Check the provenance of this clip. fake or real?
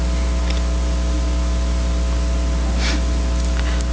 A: real